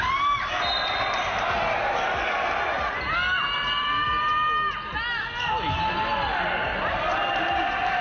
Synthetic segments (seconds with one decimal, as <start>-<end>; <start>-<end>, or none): none